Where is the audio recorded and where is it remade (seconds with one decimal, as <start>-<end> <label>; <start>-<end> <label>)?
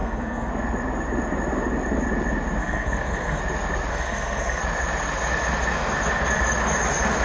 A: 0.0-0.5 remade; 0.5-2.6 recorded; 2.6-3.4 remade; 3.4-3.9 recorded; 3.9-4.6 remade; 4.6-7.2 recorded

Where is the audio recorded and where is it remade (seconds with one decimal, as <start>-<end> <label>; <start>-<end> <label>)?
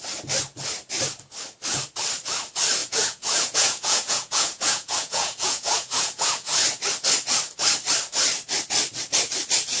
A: 0.0-2.8 recorded; 2.8-6.6 remade; 6.6-9.8 recorded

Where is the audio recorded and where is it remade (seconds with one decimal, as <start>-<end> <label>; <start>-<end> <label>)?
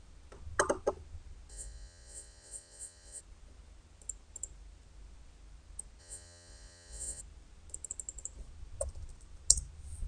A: 0.0-1.5 recorded; 1.5-3.2 remade; 3.2-6.0 recorded; 6.0-7.2 remade; 7.2-10.1 recorded